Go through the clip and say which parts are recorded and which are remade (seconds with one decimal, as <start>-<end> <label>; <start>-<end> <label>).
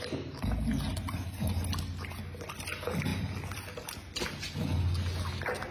0.0-5.7 recorded